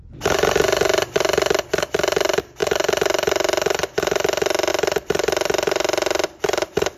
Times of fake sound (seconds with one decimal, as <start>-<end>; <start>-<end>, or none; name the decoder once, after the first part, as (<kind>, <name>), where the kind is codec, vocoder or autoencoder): none